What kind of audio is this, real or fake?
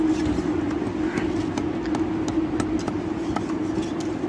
real